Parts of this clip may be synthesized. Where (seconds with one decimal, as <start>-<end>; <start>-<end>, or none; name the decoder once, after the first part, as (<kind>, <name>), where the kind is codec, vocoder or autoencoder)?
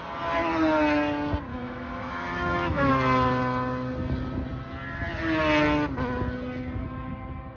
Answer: 1.5-2.9 (autoencoder, DAC-VAE)